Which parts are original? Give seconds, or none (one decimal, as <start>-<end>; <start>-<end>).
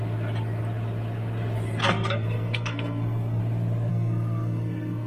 0.0-1.8; 3.4-3.9